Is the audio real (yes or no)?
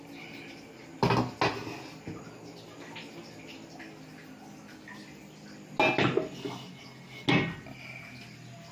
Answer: yes